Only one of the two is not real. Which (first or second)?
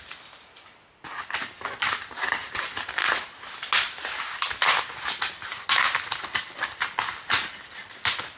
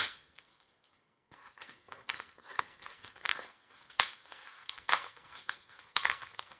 second